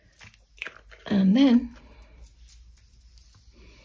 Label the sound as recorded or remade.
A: recorded